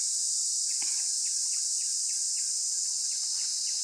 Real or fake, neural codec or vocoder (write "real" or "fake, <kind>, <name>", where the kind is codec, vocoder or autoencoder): real